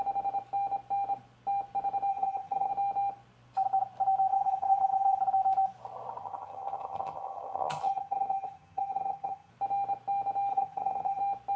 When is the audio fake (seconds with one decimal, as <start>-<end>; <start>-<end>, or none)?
2.1-2.7; 4.3-5.2; 6.2-9.5; 10.5-11.2